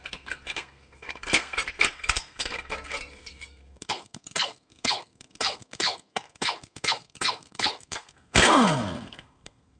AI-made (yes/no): yes